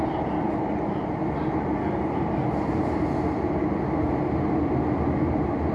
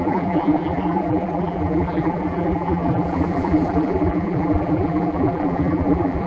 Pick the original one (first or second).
first